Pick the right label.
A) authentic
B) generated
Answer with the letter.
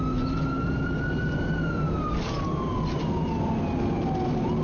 A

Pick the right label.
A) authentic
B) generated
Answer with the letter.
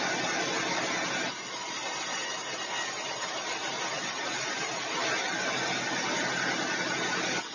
A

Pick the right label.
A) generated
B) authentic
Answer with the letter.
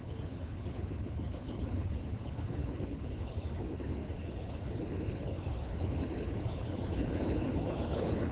A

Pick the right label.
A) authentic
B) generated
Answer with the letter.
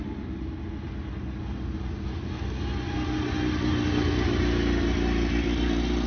A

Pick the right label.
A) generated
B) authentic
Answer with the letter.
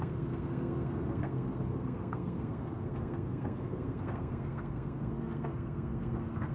A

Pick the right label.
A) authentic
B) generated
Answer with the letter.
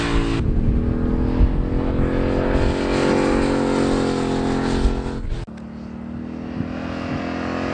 A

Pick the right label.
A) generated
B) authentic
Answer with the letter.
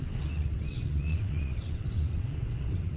A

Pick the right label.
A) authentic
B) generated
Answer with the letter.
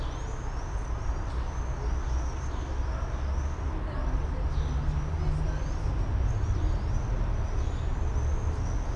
A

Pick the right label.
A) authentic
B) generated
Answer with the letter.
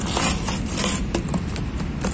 A